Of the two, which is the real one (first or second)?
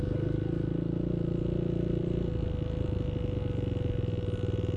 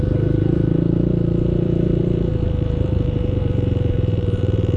first